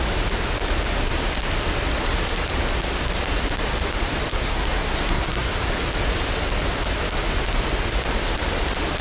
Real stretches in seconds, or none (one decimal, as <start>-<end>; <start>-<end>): 0.0-4.3; 5.5-9.0